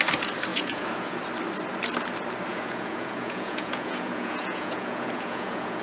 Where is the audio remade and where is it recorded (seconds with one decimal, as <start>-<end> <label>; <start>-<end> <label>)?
0.0-0.5 recorded; 0.5-1.2 remade; 1.2-2.5 recorded; 2.5-5.8 remade